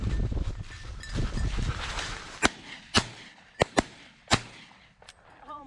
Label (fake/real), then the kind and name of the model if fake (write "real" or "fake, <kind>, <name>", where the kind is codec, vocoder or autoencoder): fake, vocoder, BigVGAN v2